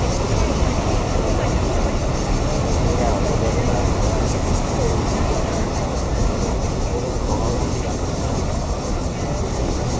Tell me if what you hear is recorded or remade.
recorded